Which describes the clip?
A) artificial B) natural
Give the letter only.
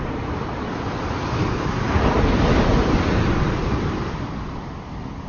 B